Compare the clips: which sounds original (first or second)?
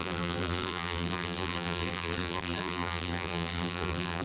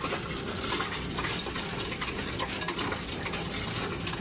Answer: second